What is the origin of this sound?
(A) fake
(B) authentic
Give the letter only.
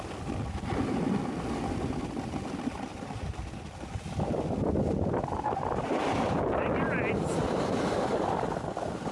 B